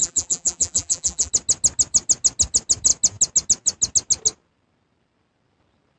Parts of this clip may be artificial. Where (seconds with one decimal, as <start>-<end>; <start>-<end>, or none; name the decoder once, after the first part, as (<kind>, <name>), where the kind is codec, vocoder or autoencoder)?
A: 0.0-1.3 (vocoder, BigVGAN v2)